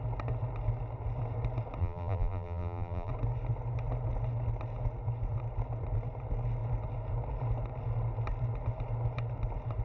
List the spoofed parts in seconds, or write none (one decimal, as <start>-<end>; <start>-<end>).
1.8-3.1